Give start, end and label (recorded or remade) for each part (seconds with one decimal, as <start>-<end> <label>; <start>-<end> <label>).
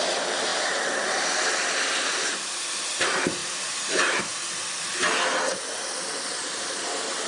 0.0-3.4 recorded; 3.4-3.9 remade; 3.9-7.3 recorded